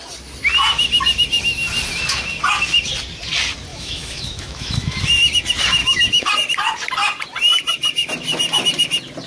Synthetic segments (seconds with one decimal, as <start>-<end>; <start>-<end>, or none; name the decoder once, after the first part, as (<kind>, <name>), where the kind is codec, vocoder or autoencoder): 3.7-5.0 (autoencoder, DAC-VAE); 5.8-6.3